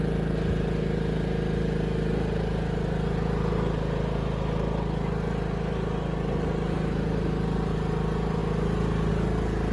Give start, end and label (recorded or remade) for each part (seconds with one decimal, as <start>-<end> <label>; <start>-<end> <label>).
0.0-9.7 recorded